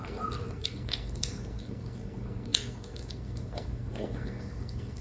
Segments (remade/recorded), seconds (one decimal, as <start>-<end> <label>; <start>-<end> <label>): 0.0-5.0 remade